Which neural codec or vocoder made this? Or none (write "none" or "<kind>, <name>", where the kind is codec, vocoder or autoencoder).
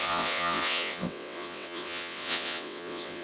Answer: vocoder, WaveNeXt